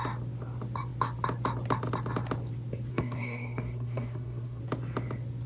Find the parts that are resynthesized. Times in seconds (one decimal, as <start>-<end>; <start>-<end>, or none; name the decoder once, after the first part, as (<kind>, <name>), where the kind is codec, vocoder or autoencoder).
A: 2.9-4.6 (codec, SNAC)